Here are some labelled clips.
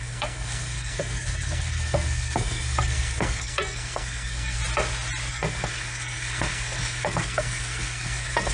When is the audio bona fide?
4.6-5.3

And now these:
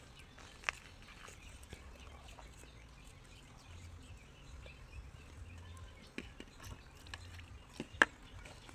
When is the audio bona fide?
0.0-8.7